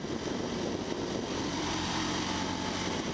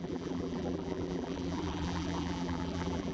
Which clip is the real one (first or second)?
first